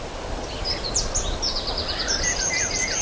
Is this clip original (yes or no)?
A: yes